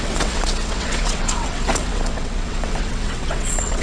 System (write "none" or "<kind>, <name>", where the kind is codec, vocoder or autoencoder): vocoder, WaveNeXt